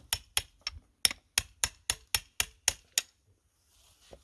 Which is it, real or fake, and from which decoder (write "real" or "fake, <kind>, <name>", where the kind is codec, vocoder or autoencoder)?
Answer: real